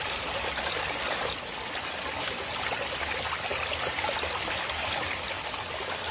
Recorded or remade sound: recorded